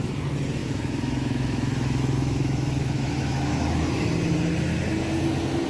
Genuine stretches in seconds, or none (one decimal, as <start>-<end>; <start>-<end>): 0.0-0.6; 4.0-5.7